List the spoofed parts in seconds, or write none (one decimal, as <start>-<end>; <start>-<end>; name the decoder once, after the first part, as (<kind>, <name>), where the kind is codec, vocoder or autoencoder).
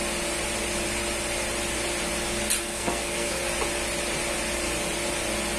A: 2.6-3.4 (codec, SNAC)